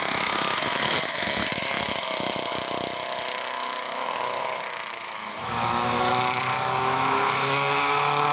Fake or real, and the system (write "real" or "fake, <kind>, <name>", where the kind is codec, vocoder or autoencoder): fake, autoencoder, DAC-VAE